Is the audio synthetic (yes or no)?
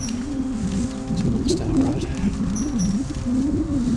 no